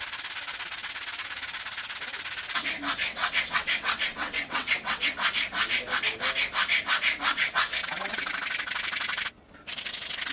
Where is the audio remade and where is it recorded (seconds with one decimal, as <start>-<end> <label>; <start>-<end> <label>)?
0.0-3.0 recorded; 3.0-5.1 remade; 5.1-7.3 recorded; 7.3-8.3 remade; 8.3-10.3 recorded